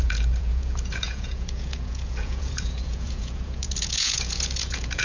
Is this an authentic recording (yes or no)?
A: no